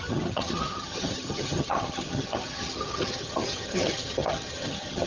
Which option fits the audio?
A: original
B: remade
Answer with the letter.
B